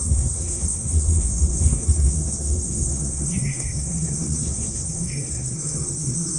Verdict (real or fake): fake